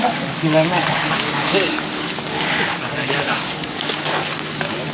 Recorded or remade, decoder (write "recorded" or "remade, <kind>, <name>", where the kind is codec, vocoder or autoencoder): remade, codec, DAC